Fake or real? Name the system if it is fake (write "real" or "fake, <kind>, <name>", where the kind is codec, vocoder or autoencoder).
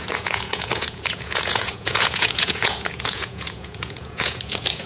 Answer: fake, vocoder, Vocos